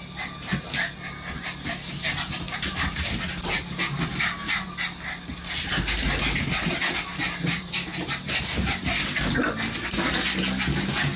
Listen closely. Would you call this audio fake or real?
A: real